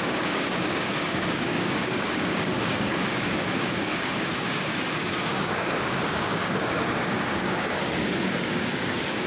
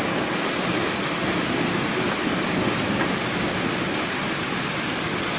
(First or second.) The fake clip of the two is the first